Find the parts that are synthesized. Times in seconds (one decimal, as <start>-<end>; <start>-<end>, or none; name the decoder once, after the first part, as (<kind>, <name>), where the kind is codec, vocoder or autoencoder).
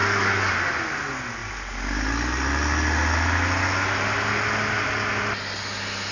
0.0-0.5 (codec, DAC)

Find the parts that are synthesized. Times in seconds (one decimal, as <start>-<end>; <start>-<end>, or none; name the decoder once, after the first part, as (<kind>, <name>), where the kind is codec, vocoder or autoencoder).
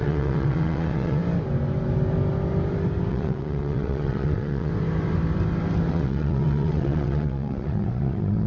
0.0-1.2 (vocoder, WaveNeXt); 3.1-4.7; 5.9-8.5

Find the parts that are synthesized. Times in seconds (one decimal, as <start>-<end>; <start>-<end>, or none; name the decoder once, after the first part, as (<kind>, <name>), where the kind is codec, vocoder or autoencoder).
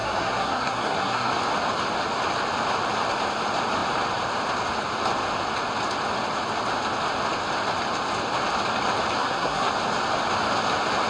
0.0-1.3 (codec, SNAC); 9.2-9.7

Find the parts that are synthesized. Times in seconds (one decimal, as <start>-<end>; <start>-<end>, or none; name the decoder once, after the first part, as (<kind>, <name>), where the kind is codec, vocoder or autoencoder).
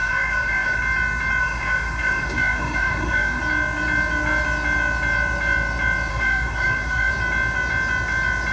0.0-0.8 (autoencoder, DAC-VAE); 1.4-3.4; 6.1-7.1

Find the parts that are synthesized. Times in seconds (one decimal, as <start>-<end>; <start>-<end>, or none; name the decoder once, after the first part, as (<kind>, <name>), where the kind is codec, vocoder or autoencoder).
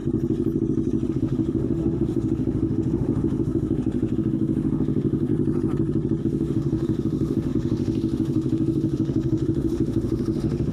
1.1-5.3 (autoencoder, DAC-VAE); 6.2-10.7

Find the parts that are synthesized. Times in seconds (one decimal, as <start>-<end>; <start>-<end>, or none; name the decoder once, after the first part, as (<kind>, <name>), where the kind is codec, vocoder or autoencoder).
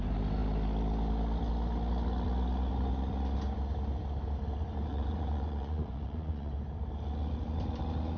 4.9-6.5 (vocoder, Vocos)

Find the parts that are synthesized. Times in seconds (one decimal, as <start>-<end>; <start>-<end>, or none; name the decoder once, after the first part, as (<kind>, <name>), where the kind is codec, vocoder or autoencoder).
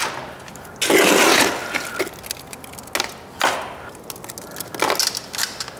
none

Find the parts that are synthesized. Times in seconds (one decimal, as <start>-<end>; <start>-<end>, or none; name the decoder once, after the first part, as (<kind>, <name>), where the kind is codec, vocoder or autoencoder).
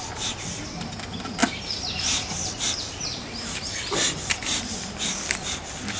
1.4-5.0 (vocoder, BigVGAN v2)